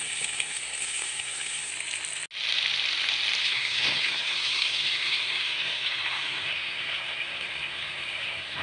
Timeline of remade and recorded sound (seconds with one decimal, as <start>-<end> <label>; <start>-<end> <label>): 0.0-1.7 remade; 1.7-3.4 recorded; 3.4-8.6 remade